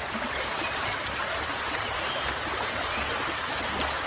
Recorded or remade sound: remade